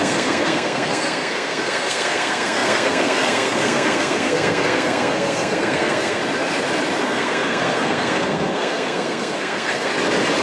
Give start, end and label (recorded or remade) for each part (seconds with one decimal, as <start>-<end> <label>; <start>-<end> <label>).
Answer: 0.0-6.2 remade; 6.2-7.0 recorded; 7.0-9.9 remade; 9.9-10.4 recorded

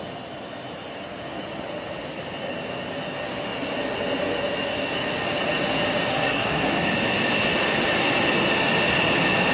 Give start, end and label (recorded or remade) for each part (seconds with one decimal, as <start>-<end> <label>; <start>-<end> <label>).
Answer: 0.0-6.1 recorded; 6.1-6.7 remade; 6.7-9.5 recorded